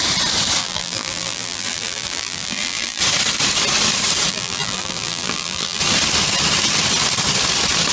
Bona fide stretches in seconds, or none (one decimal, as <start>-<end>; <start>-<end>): 0.0-0.6; 3.0-4.3; 5.8-7.9